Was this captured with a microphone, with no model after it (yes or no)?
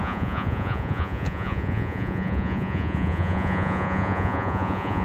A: no